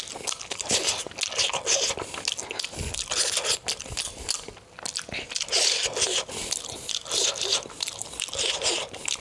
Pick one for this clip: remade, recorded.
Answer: recorded